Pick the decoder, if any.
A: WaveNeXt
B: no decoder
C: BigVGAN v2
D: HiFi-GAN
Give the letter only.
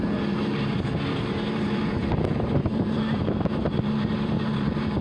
C